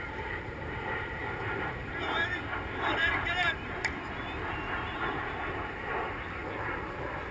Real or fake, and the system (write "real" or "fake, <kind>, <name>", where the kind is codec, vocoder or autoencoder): fake, vocoder, BigVGAN v2